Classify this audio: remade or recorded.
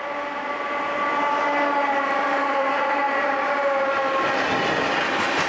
recorded